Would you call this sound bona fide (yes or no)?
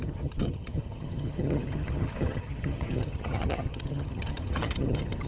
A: no